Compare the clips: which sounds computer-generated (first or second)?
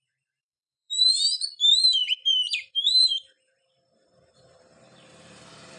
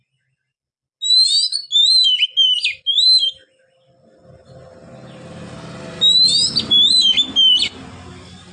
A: first